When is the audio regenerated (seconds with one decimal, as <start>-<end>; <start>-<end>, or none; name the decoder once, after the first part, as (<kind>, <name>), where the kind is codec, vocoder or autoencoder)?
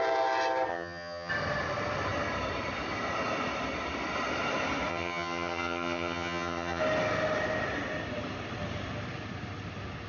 0.7-1.3 (vocoder, HiFi-GAN); 4.9-6.8